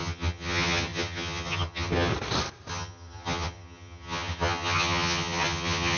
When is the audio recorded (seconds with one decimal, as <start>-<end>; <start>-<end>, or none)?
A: 2.1-2.7